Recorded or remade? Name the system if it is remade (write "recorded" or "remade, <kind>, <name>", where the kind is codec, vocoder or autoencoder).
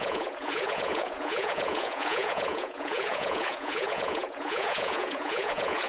remade, vocoder, Vocos